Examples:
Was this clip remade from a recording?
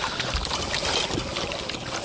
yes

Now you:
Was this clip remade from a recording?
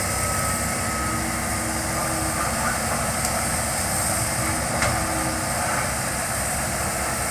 no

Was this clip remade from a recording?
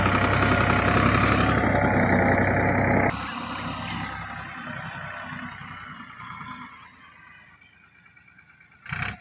no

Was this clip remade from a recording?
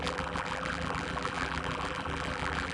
yes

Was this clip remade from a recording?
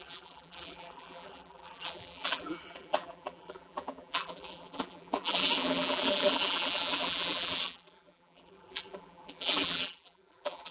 yes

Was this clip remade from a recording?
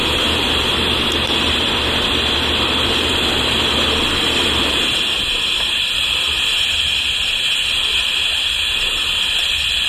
yes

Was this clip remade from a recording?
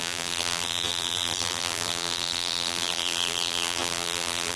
yes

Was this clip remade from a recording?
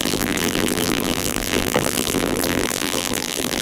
yes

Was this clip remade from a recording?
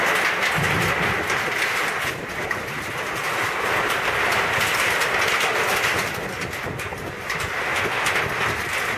no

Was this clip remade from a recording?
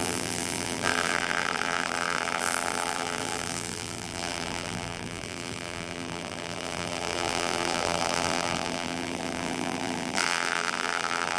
yes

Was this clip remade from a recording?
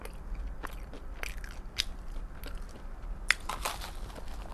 no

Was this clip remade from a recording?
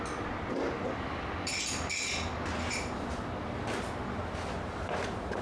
no